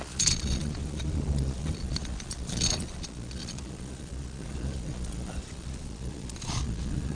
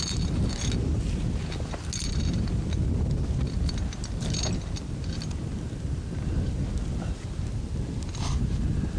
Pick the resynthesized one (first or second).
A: first